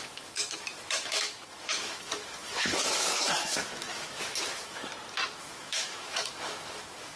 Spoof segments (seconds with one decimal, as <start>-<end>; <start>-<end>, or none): 0.0-4.9; 5.4-7.2